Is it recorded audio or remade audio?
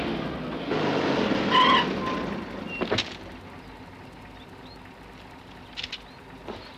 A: recorded